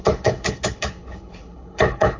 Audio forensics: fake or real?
fake